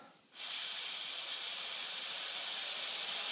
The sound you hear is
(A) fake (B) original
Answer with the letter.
B